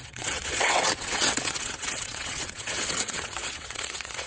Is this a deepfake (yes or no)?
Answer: yes